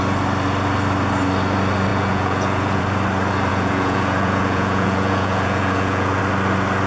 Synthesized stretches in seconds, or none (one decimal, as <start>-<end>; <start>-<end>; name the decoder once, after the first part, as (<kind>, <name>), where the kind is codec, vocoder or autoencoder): 1.9-2.8 (vocoder, Vocos); 3.5-6.2